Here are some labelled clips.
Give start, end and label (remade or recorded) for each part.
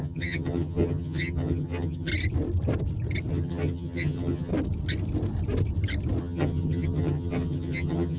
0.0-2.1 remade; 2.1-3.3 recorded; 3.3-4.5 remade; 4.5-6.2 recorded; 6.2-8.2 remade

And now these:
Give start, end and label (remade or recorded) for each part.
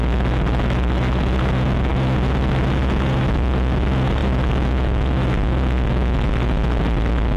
0.0-7.4 recorded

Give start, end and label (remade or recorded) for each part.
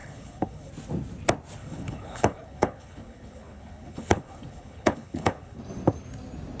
0.0-0.7 remade; 0.7-1.6 recorded; 1.6-5.6 remade; 5.6-6.6 recorded